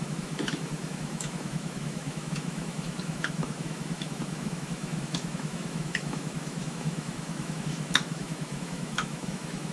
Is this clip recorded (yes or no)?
no